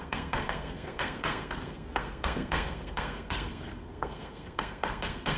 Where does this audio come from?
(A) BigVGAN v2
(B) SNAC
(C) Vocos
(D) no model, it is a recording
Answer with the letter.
B